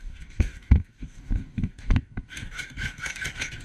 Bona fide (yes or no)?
no